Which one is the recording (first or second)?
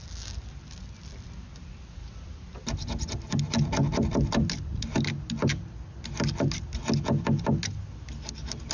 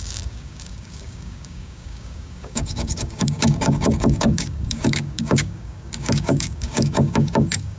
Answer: first